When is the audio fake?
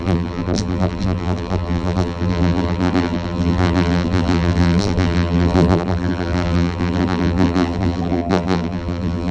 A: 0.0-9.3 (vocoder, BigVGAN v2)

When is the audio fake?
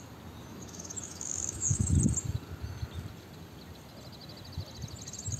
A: 0.5-1.9 (autoencoder, DAC-VAE)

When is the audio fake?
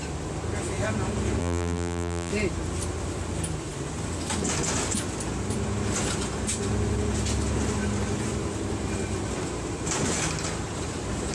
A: 1.4-2.3 (vocoder, BigVGAN v2)